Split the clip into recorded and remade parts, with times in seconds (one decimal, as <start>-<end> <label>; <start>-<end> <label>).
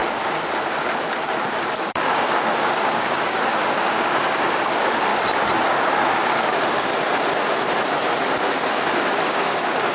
0.0-1.8 recorded; 1.8-5.1 remade; 5.1-5.7 recorded; 5.7-6.9 remade; 6.9-8.9 recorded; 8.9-9.9 remade